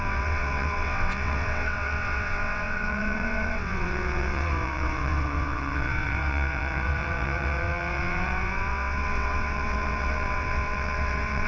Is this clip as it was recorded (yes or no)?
no